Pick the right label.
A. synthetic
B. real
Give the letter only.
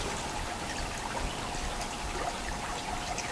B